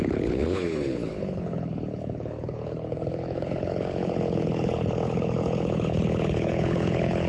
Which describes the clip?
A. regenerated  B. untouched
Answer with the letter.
A